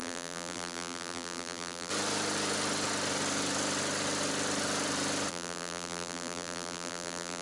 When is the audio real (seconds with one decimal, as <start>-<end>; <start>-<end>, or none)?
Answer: 1.9-5.3